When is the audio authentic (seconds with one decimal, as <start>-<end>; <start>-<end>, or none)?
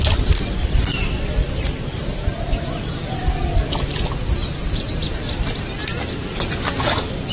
0.0-1.4; 2.9-4.6; 5.5-7.3